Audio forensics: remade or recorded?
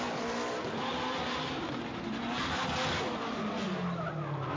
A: recorded